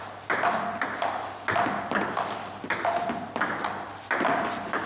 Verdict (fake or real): real